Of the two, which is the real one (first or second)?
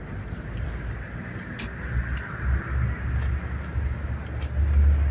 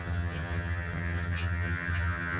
first